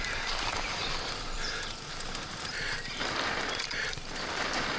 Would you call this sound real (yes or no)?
no